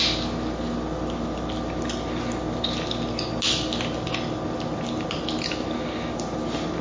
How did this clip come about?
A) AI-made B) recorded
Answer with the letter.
B